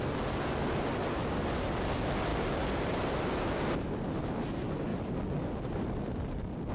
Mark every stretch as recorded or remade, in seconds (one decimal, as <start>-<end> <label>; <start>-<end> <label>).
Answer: 0.0-6.7 recorded